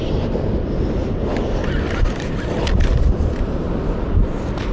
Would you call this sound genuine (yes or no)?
yes